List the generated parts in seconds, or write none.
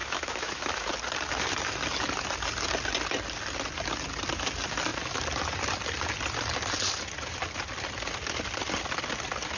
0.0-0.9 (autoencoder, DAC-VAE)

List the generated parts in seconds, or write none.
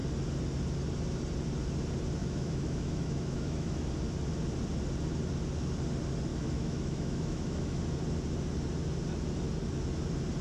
2.2-3.9 (autoencoder, DAC-VAE); 6.3-7.8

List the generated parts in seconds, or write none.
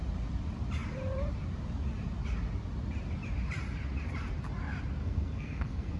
5.0-6.0 (codec, SNAC)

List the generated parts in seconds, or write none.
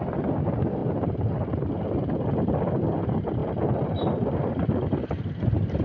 none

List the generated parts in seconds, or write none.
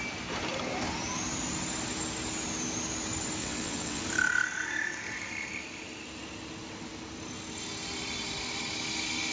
3.4-4.0 (vocoder, WaveNeXt)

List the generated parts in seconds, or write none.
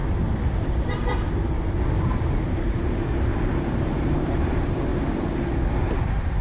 0.6-4.9 (vocoder, BigVGAN v2)